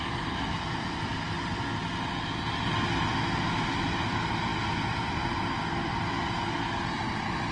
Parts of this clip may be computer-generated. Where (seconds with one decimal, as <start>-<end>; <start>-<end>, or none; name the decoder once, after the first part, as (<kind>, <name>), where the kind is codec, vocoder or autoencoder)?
none